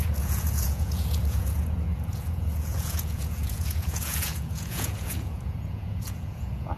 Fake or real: fake